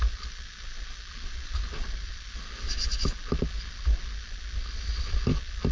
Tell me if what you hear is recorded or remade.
recorded